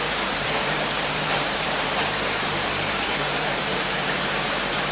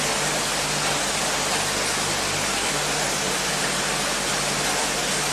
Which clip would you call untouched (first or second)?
second